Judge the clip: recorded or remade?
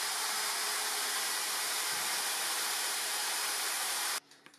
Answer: remade